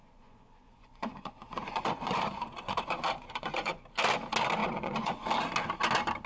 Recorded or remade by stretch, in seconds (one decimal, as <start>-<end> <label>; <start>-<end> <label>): 0.0-3.8 remade; 3.8-4.6 recorded; 4.6-5.3 remade; 5.3-6.3 recorded